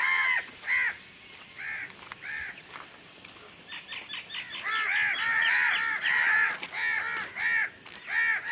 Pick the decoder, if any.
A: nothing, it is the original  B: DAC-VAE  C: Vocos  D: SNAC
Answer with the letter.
A